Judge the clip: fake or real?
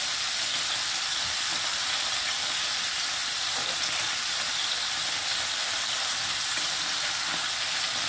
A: real